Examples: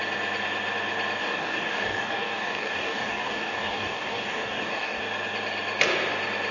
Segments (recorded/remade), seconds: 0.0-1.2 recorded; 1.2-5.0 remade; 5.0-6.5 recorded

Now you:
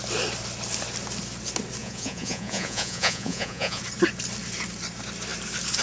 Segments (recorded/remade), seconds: 0.0-1.8 recorded; 1.8-3.8 remade; 3.8-5.8 recorded

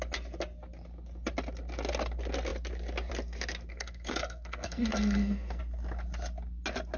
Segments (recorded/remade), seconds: 0.0-3.7 recorded; 3.7-5.6 remade; 5.6-7.0 recorded

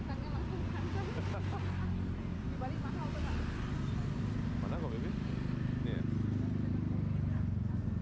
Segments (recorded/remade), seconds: 0.0-8.0 recorded